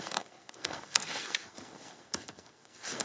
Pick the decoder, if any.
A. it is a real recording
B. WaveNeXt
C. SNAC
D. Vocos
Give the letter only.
C